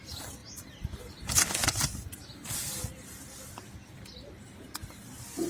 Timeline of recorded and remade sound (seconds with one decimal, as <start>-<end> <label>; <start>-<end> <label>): 0.0-0.4 recorded; 0.4-1.0 remade; 1.0-5.5 recorded